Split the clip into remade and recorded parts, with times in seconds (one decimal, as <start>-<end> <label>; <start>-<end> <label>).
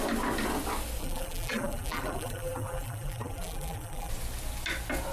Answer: 0.0-1.0 recorded; 1.0-4.1 remade; 4.1-5.1 recorded